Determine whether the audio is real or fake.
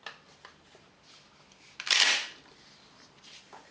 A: real